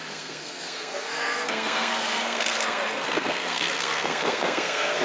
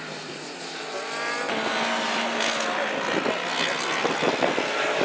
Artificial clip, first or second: first